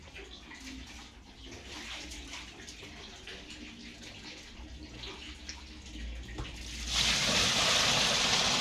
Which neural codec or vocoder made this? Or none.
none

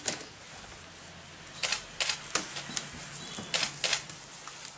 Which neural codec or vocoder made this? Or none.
none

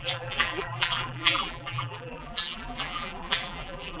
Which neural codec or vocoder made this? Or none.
vocoder, BigVGAN v2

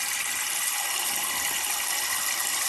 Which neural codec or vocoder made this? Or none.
vocoder, BigVGAN v2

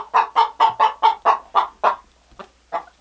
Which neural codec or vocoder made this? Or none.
none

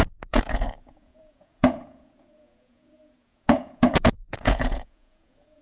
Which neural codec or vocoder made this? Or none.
vocoder, Vocos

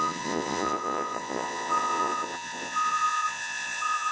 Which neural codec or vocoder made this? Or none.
vocoder, Vocos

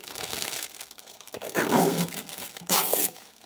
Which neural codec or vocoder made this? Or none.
codec, SNAC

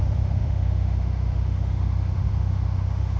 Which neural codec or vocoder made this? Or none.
autoencoder, DAC-VAE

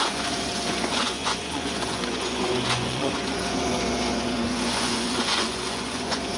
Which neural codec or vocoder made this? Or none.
vocoder, Vocos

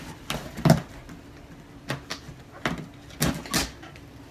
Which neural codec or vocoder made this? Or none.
none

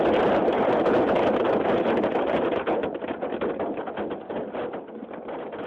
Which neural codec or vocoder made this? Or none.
none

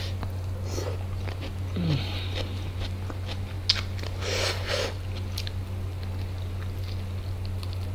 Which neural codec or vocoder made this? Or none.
none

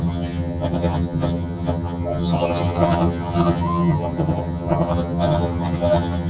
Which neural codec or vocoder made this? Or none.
vocoder, HiFi-GAN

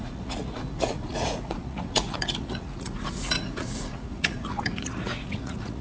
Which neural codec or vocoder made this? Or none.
vocoder, Vocos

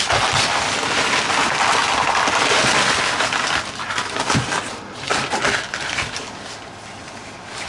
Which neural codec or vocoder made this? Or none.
none